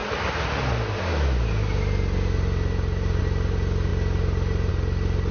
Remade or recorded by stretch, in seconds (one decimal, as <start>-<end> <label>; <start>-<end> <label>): 0.0-5.3 recorded